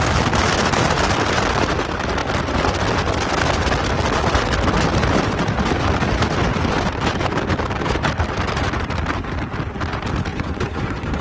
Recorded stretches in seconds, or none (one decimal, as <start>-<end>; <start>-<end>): 0.0-10.3